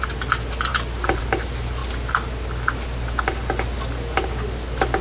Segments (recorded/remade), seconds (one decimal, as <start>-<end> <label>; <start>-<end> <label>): 0.0-0.7 recorded; 0.7-1.2 remade; 1.2-5.0 recorded